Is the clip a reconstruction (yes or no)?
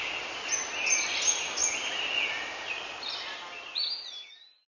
no